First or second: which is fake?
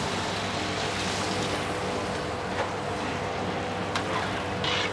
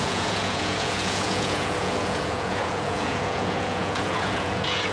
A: second